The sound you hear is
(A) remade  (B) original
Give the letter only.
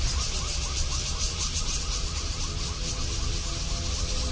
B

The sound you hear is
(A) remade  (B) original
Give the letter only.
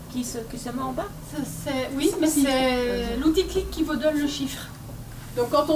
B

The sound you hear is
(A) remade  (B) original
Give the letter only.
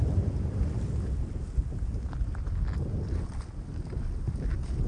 B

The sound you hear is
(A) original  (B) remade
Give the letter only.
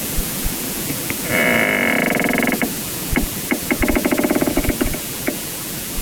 B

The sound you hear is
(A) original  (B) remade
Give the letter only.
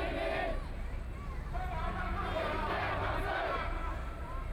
A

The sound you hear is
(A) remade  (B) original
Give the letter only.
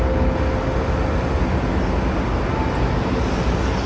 B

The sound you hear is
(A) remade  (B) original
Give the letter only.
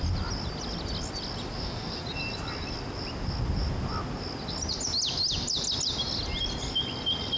B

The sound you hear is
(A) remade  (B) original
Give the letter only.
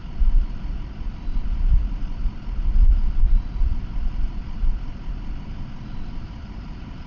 A